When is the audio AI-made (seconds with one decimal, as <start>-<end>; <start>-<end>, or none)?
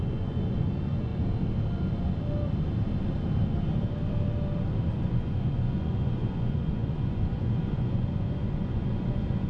0.0-1.1; 4.9-9.5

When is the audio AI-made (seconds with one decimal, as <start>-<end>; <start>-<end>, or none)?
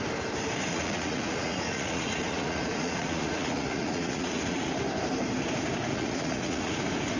0.7-4.7; 5.9-6.8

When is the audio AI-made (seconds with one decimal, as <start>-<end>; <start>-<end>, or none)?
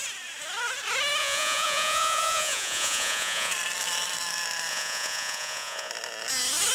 1.2-3.5; 4.7-5.9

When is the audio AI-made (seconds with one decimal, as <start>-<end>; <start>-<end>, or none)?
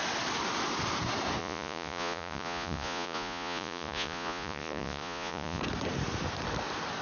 1.4-5.6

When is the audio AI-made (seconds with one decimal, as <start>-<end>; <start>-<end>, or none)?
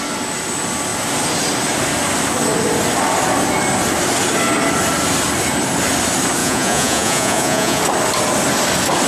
6.4-7.8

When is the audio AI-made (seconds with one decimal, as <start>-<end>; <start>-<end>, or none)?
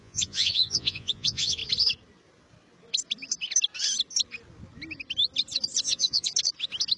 0.0-1.6; 5.8-6.3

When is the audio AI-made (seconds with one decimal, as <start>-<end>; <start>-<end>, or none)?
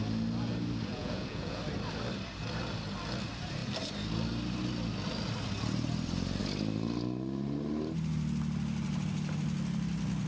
0.9-1.6